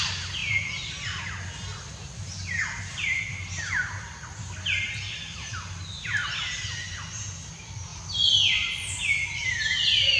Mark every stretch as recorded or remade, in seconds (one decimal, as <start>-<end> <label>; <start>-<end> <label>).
0.0-0.4 recorded; 0.4-4.0 remade; 4.0-10.2 recorded